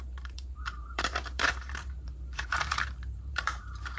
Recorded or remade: remade